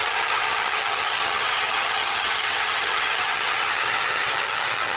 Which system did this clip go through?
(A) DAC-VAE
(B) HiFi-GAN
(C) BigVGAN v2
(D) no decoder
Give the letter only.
B